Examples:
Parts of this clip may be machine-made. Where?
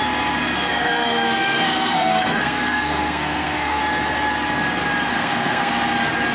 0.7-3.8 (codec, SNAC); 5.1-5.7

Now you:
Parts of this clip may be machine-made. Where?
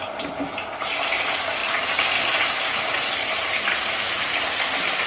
none